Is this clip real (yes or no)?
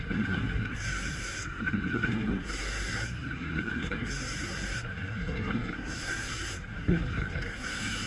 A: no